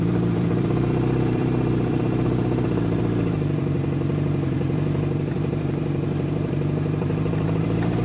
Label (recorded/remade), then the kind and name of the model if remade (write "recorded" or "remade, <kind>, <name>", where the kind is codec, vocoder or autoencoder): remade, vocoder, BigVGAN v2